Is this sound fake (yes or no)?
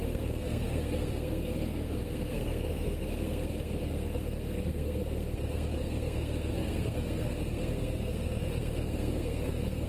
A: yes